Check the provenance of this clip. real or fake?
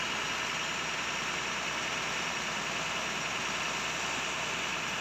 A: real